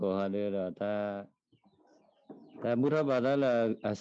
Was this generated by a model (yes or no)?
no